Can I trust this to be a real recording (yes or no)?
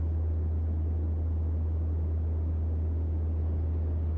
yes